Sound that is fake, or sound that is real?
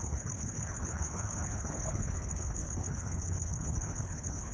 fake